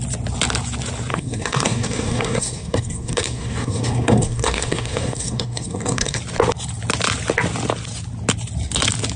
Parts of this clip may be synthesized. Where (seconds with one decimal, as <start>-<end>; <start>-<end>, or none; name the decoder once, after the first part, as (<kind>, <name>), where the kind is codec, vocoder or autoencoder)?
1.1-6.2 (codec, SNAC)